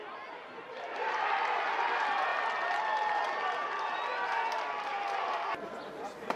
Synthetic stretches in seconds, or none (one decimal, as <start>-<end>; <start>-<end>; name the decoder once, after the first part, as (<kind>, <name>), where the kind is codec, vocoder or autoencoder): none

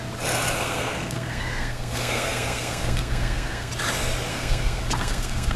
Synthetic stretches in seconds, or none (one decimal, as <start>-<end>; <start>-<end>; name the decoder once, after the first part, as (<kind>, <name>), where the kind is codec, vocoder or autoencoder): 0.6-3.7 (codec, SNAC); 4.3-5.6

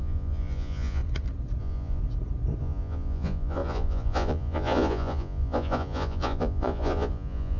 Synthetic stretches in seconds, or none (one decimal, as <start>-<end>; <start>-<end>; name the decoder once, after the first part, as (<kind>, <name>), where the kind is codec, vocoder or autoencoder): 0.0-1.0 (vocoder, Vocos); 1.6-2.0; 2.6-7.6

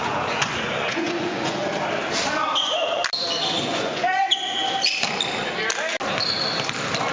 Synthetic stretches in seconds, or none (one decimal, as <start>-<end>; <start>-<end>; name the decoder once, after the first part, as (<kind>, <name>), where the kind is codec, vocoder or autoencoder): 0.0-1.6 (vocoder, Vocos); 2.6-3.0; 3.6-4.6

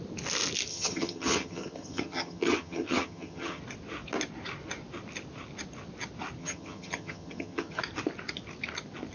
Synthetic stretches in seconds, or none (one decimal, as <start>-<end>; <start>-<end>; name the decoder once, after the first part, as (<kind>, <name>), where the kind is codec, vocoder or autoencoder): 0.7-3.6 (vocoder, HiFi-GAN); 6.4-7.8

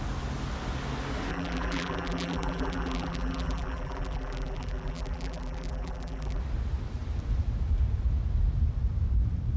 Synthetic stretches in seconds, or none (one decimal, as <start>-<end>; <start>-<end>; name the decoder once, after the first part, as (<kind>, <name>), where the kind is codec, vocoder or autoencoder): 1.3-6.4 (vocoder, BigVGAN v2)

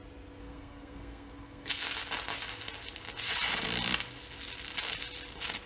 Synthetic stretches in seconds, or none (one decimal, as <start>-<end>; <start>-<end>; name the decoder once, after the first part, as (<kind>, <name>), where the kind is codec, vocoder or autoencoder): 0.4-1.7 (codec, SNAC)

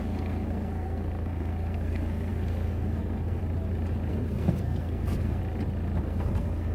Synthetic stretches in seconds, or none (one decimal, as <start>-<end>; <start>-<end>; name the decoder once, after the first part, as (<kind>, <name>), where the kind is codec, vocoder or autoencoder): 0.0-3.4 (codec, SNAC); 4.1-5.4; 6.0-6.7